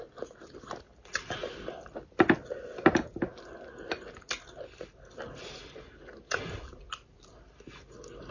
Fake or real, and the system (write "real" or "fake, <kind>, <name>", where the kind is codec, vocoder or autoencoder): real